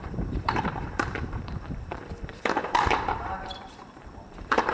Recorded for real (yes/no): no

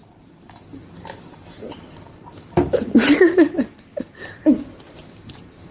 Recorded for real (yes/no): no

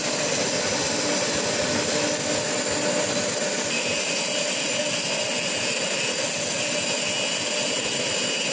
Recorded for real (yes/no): yes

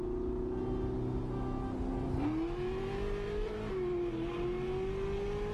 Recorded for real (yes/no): yes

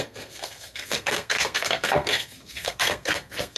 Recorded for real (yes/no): no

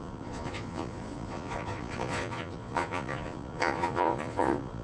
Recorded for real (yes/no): no